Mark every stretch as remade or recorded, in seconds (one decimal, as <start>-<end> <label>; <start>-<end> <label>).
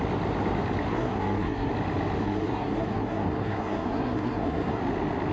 0.0-0.9 recorded; 0.9-1.7 remade; 1.7-2.2 recorded; 2.2-4.8 remade; 4.8-5.3 recorded